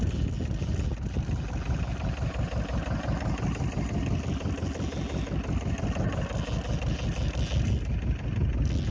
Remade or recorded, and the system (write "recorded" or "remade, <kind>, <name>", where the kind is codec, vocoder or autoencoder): recorded